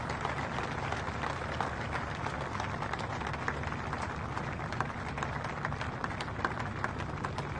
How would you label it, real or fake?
real